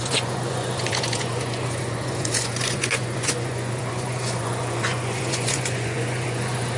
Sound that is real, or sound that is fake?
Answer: fake